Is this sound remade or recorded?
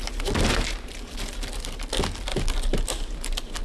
recorded